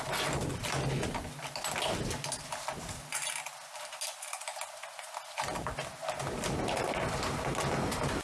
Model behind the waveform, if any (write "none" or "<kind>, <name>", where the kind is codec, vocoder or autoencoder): none